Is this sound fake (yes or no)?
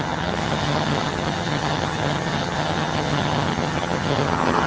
yes